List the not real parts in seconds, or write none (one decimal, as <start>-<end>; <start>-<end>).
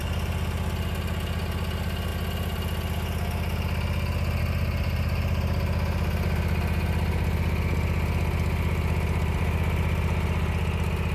none